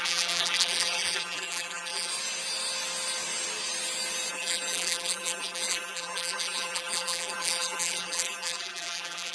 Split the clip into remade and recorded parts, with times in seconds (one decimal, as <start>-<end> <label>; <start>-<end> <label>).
0.0-2.1 remade; 2.1-4.3 recorded; 4.3-9.3 remade